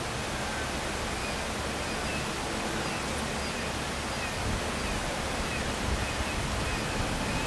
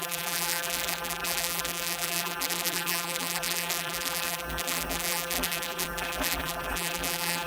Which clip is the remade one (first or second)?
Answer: second